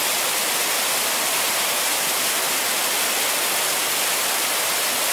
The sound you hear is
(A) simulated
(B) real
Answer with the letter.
B